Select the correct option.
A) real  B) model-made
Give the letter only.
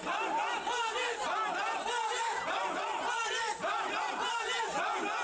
A